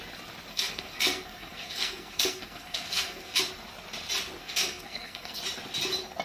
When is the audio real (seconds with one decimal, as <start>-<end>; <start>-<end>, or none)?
0.0-0.5; 3.4-4.4; 5.4-6.2